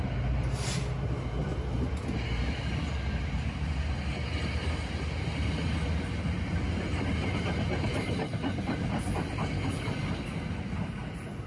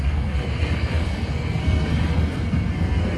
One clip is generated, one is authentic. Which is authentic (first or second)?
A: first